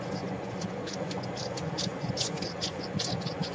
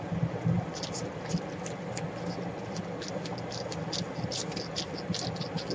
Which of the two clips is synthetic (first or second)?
first